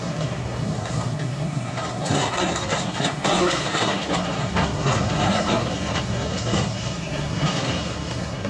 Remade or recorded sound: remade